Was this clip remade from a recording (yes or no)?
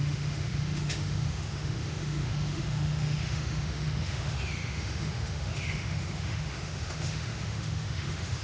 yes